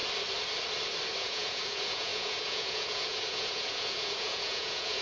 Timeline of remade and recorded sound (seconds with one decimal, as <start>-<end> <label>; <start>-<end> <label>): 0.0-1.2 recorded; 1.2-5.0 remade